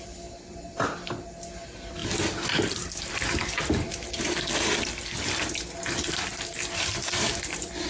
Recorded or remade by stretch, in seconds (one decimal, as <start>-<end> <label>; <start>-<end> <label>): 0.0-7.9 recorded